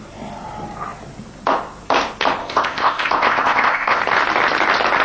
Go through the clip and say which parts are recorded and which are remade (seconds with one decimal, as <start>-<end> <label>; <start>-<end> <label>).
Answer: 0.0-2.4 recorded; 2.4-4.0 remade; 4.0-5.0 recorded